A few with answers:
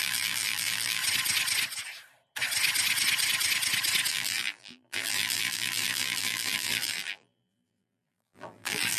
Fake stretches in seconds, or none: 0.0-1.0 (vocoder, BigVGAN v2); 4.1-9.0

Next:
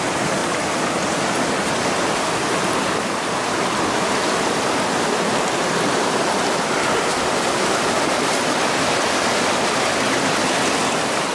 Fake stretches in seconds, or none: none

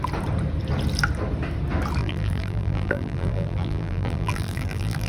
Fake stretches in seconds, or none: 2.0-5.1 (vocoder, BigVGAN v2)

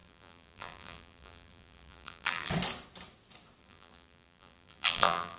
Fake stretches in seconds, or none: 0.0-2.5 (vocoder, BigVGAN v2); 3.6-5.4

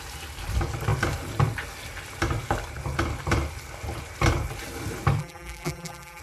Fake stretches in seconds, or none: 5.2-6.2 (vocoder, BigVGAN v2)

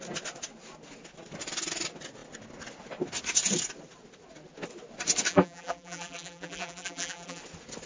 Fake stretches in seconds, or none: 5.3-7.4 (vocoder, BigVGAN v2)

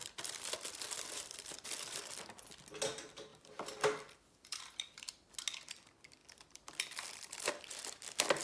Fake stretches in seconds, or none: 0.0-2.2 (vocoder, BigVGAN v2); 3.3-5.1; 6.2-7.6

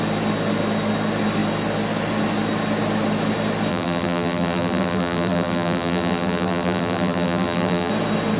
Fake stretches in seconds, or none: 3.7-7.9 (vocoder, BigVGAN v2)